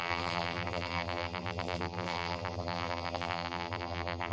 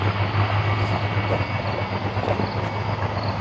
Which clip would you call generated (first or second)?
first